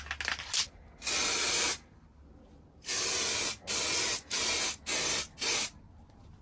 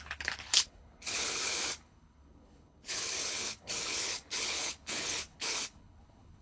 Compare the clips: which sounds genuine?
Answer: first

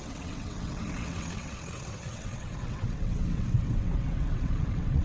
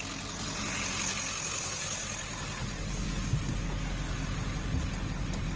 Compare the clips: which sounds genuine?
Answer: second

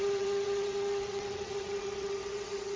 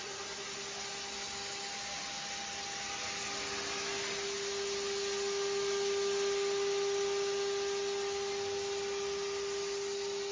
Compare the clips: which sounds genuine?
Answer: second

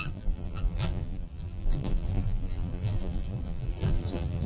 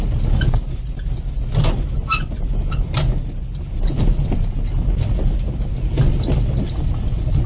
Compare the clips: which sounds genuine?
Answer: second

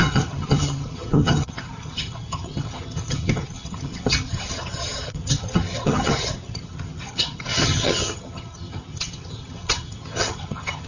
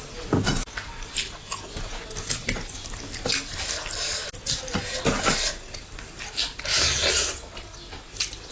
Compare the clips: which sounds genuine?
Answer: second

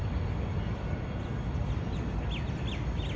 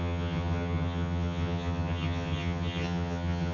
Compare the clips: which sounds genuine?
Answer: first